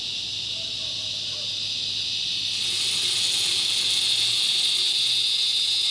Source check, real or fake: real